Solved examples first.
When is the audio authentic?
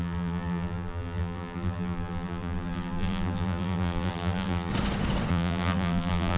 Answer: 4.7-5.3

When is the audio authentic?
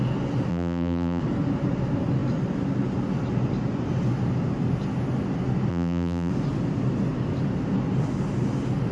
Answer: 0.0-0.5; 1.2-5.7; 6.3-8.9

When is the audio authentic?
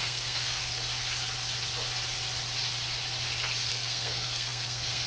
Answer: 0.6-3.7